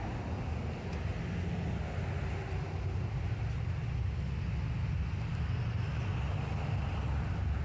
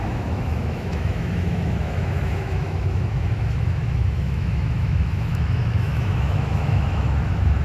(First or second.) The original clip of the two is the first